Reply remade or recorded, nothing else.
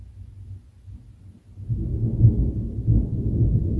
recorded